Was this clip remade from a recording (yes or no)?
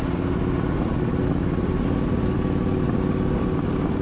no